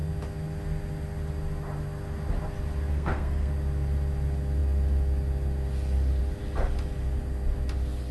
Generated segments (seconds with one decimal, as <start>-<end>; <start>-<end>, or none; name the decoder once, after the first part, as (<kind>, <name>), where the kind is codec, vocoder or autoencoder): 2.9-3.5 (codec, SNAC)